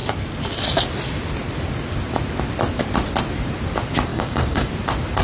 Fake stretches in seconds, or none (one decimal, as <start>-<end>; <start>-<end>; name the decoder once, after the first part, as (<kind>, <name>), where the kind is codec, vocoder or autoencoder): 4.1-4.7 (codec, DAC)